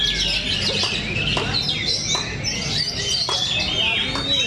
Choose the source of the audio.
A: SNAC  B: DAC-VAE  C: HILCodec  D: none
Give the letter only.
D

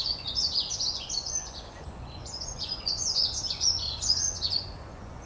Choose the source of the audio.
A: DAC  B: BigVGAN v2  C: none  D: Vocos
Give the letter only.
D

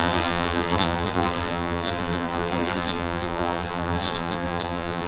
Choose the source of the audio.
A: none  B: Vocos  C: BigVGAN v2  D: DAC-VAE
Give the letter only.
C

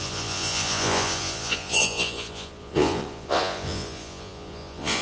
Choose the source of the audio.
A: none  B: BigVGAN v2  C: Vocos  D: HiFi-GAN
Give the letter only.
C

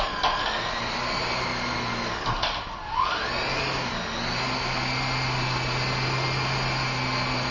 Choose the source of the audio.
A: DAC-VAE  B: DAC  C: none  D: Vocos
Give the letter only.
C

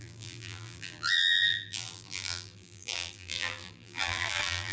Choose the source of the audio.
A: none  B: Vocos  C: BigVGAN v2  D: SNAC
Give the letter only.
C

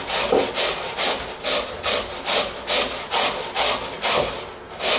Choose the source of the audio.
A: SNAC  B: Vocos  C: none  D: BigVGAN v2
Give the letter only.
C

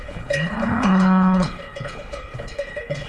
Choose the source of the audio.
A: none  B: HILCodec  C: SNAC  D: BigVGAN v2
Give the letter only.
B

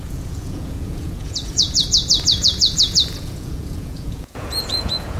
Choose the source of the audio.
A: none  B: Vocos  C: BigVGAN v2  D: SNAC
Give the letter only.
B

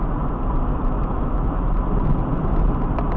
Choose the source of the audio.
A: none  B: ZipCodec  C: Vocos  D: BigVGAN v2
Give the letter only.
A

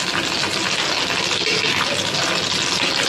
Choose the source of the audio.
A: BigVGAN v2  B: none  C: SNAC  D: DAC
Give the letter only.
B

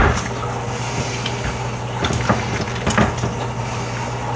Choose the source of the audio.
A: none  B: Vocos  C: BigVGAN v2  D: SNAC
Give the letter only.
A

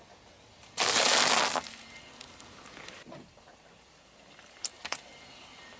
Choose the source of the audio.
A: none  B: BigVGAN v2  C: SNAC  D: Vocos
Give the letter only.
A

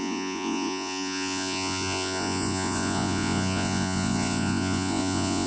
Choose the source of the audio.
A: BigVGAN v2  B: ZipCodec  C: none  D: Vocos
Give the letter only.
D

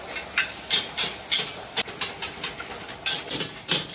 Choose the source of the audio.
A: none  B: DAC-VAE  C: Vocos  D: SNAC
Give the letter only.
A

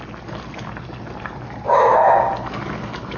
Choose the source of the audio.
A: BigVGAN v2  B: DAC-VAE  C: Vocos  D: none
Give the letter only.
D